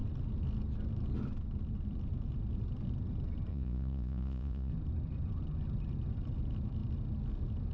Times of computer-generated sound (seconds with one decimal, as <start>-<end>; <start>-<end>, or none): 3.5-4.7